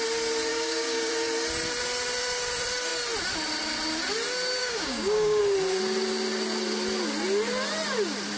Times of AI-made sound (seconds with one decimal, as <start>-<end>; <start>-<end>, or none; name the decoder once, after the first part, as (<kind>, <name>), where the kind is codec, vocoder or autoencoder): 0.5-1.1 (codec, DAC); 4.6-5.4